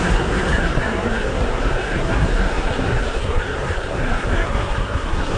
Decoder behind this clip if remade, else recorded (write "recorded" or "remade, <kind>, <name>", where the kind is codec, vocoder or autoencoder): remade, codec, SNAC